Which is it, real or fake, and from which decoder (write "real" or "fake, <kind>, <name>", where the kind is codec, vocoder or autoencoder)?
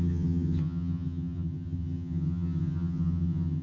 fake, vocoder, HiFi-GAN